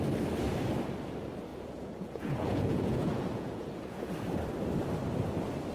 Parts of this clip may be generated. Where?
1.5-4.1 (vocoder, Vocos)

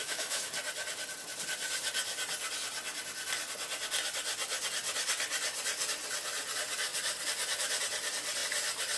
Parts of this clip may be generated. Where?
0.0-0.5 (autoencoder, DAC-VAE)

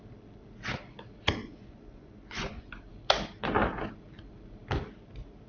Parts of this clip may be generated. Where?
1.4-2.7 (vocoder, Vocos)

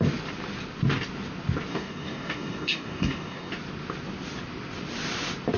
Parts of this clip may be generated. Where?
1.7-3.5 (codec, DAC)

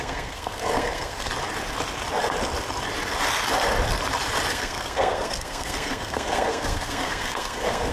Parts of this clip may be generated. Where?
0.0-1.3 (codec, SNAC); 4.5-7.9